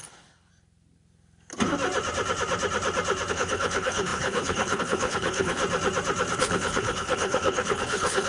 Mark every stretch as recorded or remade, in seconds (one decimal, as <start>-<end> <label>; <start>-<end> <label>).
0.0-0.5 remade; 0.5-3.3 recorded; 3.3-5.6 remade; 5.6-6.4 recorded; 6.4-8.3 remade